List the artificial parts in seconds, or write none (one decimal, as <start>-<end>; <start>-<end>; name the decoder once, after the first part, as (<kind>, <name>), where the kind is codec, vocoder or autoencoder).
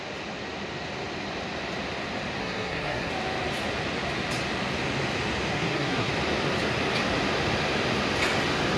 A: 2.4-3.1 (codec, SNAC); 5.5-6.1